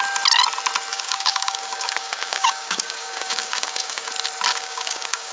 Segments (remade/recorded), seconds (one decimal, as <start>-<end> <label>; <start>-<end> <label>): 0.0-0.9 recorded; 0.9-4.1 remade; 4.1-4.5 recorded; 4.5-5.3 remade